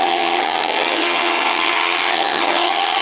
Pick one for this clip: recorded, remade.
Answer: remade